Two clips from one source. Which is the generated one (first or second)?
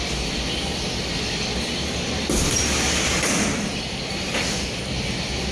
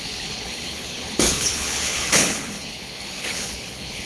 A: second